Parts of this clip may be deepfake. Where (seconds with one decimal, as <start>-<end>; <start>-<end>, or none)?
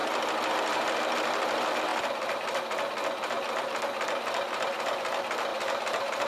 1.9-2.6; 5.5-6.3